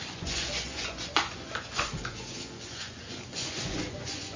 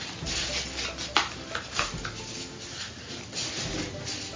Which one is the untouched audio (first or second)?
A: second